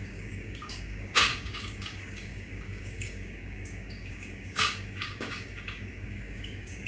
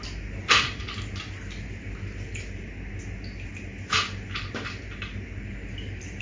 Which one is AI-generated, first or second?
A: first